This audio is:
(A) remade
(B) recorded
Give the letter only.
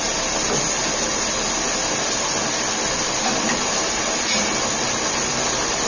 B